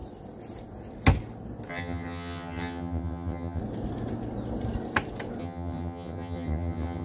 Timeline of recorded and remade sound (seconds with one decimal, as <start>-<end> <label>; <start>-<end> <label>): 0.0-1.7 recorded; 1.7-3.6 remade; 3.6-5.4 recorded; 5.4-7.0 remade